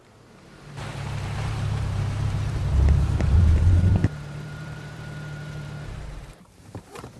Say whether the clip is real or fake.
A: fake